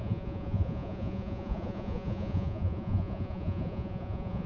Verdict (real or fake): fake